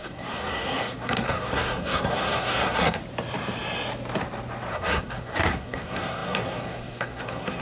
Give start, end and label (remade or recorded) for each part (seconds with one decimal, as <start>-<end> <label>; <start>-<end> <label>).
0.0-3.0 remade; 3.0-4.7 recorded; 4.7-7.6 remade